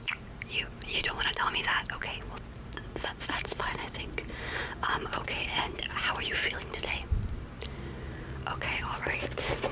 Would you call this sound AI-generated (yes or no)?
yes